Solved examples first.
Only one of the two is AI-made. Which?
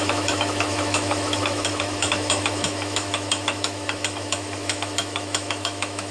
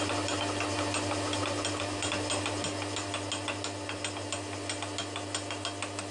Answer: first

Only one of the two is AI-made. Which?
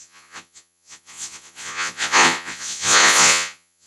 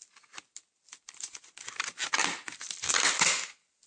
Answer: first